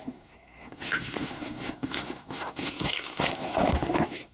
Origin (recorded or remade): remade